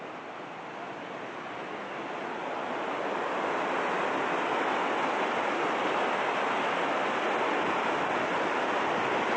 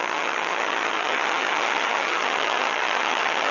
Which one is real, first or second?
first